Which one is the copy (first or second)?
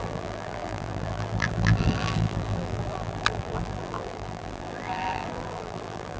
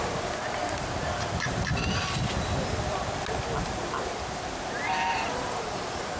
first